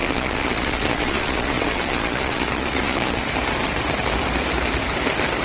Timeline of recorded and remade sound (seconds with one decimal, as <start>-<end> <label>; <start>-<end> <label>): 0.0-3.2 remade; 3.2-5.4 recorded